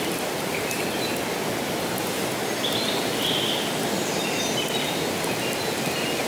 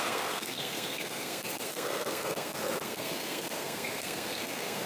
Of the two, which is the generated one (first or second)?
second